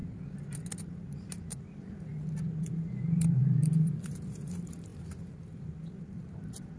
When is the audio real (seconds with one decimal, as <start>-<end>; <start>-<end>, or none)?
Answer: 0.0-1.0; 2.1-2.6